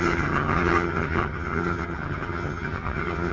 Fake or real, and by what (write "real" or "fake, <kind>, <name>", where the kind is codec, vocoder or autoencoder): fake, vocoder, HiFi-GAN